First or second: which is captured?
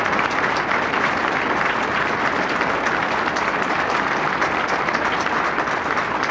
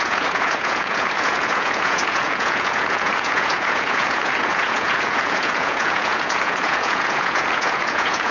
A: first